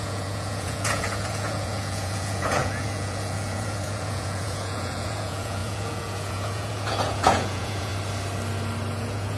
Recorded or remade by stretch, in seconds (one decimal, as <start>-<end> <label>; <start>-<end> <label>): 0.0-7.9 remade; 7.9-8.9 recorded; 8.9-9.4 remade